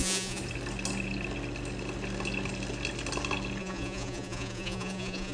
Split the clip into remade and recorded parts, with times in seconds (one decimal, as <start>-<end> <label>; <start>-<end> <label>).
0.0-0.4 remade; 0.4-3.6 recorded; 3.6-5.3 remade